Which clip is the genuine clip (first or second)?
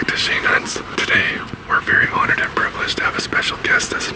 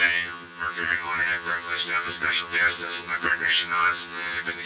first